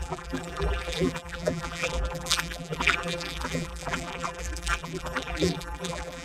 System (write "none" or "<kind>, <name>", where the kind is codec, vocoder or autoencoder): vocoder, BigVGAN v2